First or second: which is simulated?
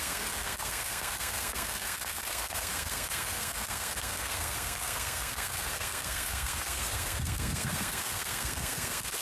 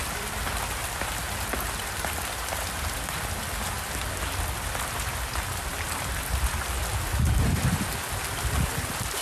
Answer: first